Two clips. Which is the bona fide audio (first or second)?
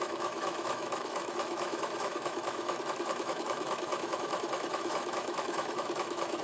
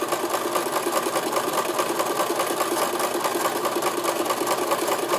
second